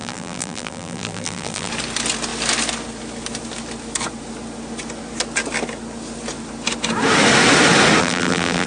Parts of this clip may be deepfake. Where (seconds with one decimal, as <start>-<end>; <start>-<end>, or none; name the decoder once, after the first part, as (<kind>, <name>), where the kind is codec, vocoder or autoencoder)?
0.0-1.7 (vocoder, BigVGAN v2); 8.0-8.7